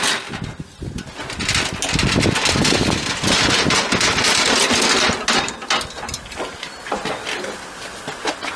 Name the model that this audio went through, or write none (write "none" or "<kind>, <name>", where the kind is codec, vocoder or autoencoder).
none